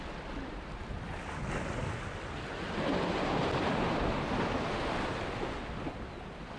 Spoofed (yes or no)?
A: no